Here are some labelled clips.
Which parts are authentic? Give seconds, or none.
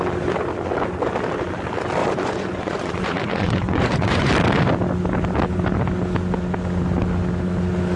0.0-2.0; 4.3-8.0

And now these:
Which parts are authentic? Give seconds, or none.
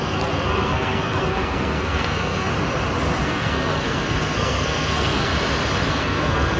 2.5-3.2; 5.3-5.9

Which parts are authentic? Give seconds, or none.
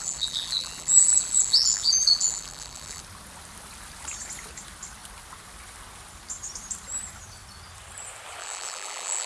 3.0-8.4